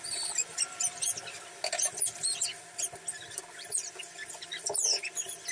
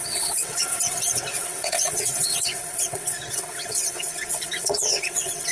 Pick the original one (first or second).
first